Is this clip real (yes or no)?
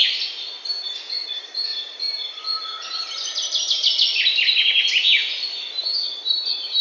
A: yes